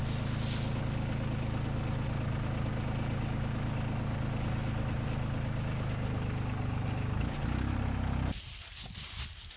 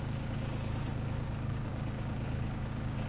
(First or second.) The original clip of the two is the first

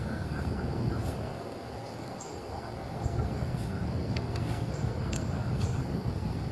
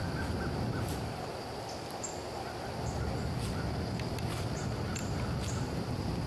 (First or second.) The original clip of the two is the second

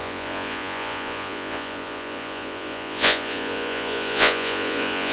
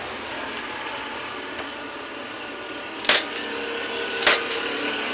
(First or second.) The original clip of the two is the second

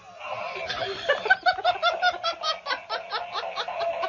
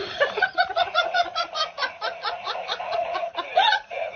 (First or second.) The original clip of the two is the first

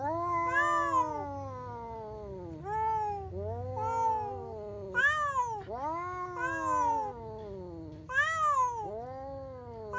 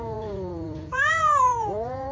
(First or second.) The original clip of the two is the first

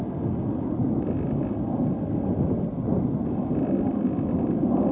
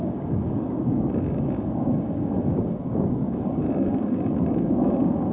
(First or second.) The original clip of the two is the first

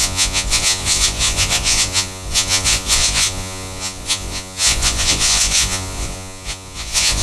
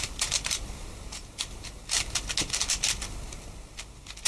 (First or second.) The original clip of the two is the second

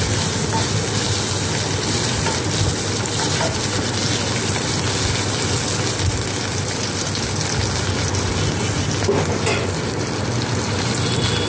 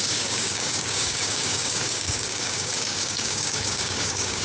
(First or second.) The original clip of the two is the first